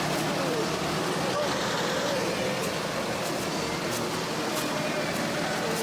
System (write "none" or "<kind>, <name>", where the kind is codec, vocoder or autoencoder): none